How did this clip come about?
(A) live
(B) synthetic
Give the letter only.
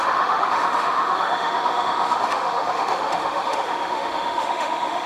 B